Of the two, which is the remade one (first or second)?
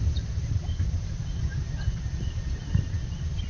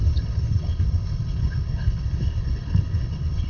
second